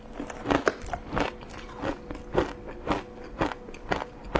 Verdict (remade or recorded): recorded